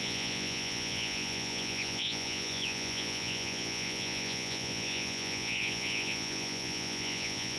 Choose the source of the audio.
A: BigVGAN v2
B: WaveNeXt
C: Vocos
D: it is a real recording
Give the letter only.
C